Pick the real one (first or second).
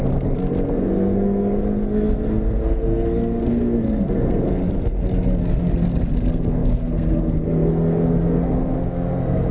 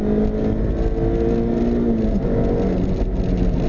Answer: second